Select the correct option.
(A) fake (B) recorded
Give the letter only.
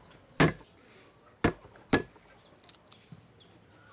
B